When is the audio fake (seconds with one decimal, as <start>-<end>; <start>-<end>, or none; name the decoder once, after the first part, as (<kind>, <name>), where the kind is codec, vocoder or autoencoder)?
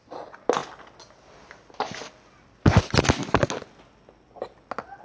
none